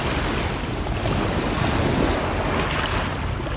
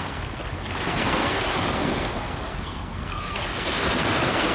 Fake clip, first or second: second